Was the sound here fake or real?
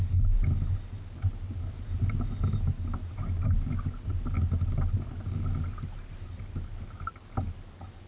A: real